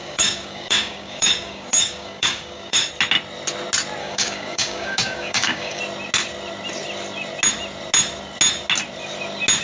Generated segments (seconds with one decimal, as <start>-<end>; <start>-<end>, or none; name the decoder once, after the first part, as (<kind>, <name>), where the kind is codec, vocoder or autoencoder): 0.0-2.9 (codec, DAC); 4.0-5.8